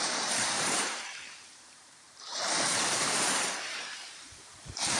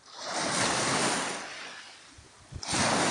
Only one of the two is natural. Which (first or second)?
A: second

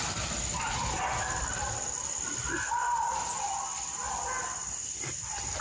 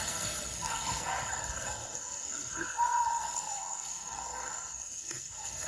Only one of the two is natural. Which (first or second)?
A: first